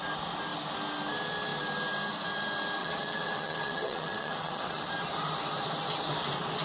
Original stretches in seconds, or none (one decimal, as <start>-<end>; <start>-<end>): 0.0-2.8; 4.8-6.6